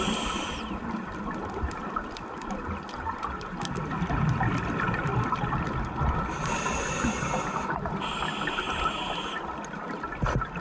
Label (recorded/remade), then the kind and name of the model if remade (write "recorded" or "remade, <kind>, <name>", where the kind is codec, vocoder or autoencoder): recorded